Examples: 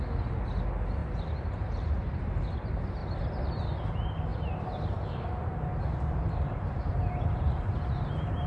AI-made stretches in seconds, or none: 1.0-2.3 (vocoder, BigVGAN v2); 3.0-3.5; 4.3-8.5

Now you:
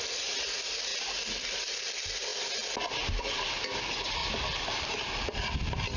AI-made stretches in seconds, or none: 0.9-1.8 (vocoder, BigVGAN v2); 4.2-4.9

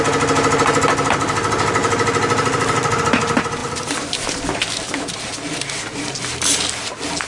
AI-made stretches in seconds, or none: 1.8-3.0 (vocoder, BigVGAN v2); 3.6-5.0

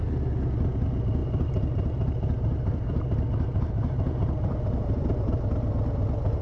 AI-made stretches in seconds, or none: 1.2-5.0 (vocoder, BigVGAN v2)

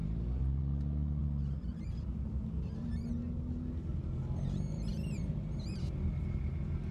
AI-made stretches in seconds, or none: 0.0-0.6 (vocoder, BigVGAN v2); 1.2-3.0; 4.9-6.5

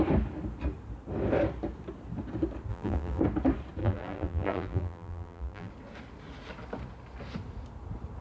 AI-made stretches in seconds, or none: 2.7-3.2 (vocoder, BigVGAN v2); 3.8-5.7

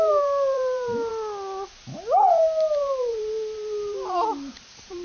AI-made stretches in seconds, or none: 0.0-1.1 (vocoder, BigVGAN v2); 2.2-5.0

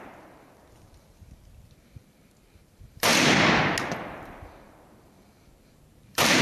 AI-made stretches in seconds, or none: 0.0-3.1 (vocoder, BigVGAN v2); 4.1-6.4